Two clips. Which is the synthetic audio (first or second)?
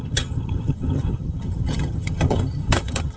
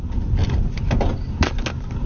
first